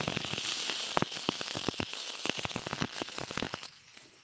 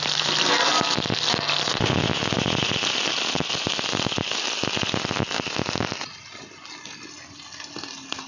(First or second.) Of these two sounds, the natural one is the second